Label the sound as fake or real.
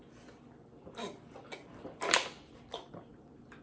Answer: fake